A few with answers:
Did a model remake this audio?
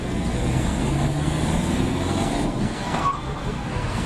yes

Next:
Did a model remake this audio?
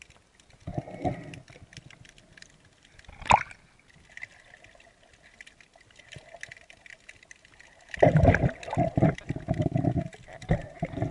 no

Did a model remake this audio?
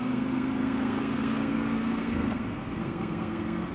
yes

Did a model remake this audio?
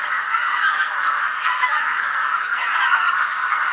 yes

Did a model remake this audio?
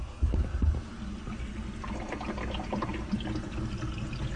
no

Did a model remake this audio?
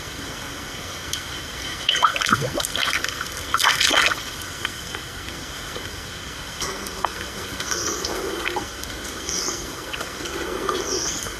yes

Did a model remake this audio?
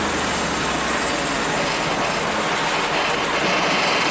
no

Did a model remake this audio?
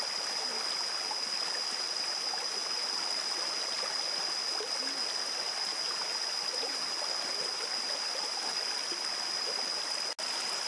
no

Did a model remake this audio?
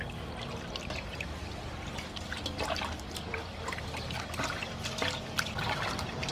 no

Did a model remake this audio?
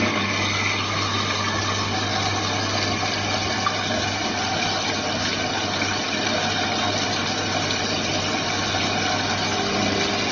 no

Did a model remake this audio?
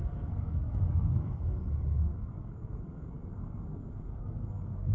yes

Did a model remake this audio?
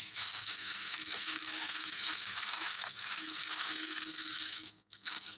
yes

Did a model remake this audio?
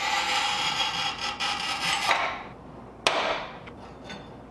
no